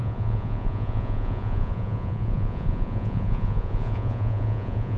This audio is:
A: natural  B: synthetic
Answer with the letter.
B